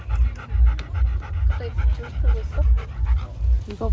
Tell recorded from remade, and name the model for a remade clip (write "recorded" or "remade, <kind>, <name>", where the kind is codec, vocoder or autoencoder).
recorded